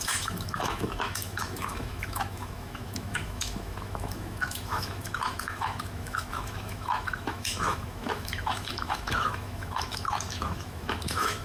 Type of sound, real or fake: fake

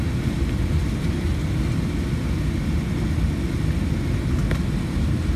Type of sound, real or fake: real